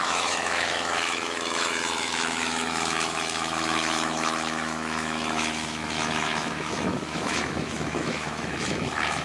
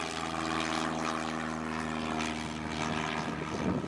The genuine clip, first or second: second